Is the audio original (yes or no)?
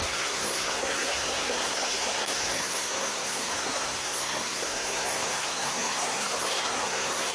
no